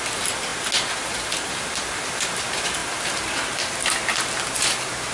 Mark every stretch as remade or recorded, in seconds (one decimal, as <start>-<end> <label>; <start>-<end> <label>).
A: 0.0-5.1 recorded